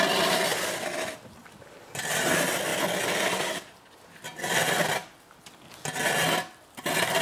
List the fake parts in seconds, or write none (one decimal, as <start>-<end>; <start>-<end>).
none